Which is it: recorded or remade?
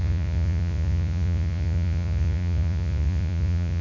remade